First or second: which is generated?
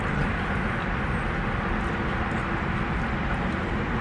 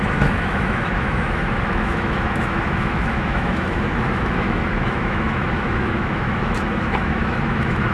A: second